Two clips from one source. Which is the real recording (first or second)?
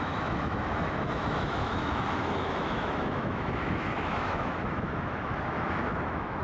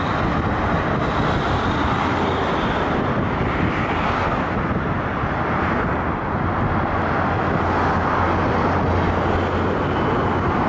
second